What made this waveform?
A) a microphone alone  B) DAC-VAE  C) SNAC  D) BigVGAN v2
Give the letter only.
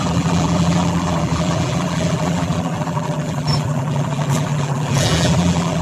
D